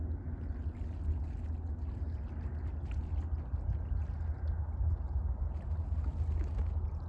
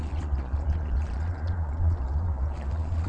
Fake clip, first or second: second